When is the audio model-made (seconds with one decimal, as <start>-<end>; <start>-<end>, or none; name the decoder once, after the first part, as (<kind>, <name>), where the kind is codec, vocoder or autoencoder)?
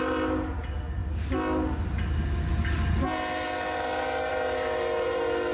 none